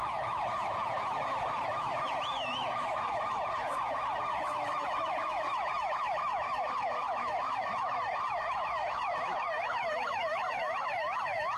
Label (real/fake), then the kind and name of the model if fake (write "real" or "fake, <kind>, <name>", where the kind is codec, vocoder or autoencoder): fake, autoencoder, DAC-VAE